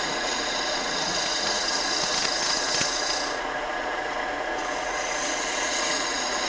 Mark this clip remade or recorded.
remade